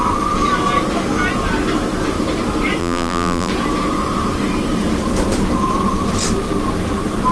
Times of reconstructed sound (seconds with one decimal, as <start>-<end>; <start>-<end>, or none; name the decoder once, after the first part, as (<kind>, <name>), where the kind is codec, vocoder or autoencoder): 2.8-3.5 (vocoder, BigVGAN v2)

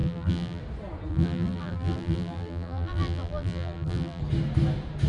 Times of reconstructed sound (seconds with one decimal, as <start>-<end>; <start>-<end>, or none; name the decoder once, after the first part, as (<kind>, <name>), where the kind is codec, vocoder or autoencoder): 0.0-0.6 (vocoder, BigVGAN v2); 1.1-4.2

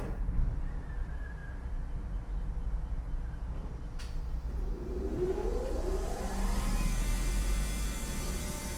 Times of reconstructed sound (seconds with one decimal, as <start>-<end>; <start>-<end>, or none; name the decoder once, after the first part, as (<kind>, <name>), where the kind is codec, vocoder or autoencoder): none

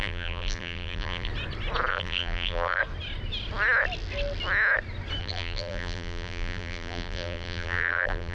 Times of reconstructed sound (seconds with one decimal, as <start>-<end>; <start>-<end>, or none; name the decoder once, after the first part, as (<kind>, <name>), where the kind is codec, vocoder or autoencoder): 0.0-1.3 (vocoder, BigVGAN v2); 1.9-2.8; 5.2-8.3

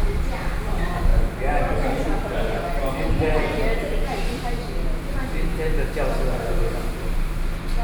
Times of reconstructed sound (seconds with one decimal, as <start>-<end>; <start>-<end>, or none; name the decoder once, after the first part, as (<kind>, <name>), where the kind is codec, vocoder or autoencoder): 0.0-5.5 (vocoder, BigVGAN v2); 6.6-7.8

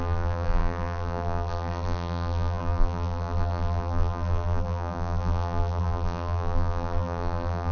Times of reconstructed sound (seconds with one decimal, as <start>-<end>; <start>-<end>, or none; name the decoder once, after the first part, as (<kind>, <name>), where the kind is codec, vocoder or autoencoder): 0.0-7.7 (vocoder, BigVGAN v2)

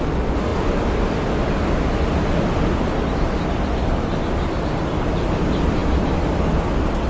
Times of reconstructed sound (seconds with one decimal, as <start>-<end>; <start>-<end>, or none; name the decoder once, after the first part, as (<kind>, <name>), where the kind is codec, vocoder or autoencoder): 0.5-4.8 (vocoder, BigVGAN v2); 5.8-7.1

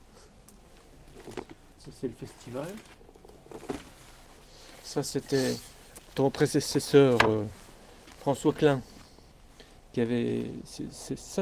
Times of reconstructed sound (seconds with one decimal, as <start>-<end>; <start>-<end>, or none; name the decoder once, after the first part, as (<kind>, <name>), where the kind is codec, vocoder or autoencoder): 6.9-9.3 (vocoder, BigVGAN v2); 10.3-10.8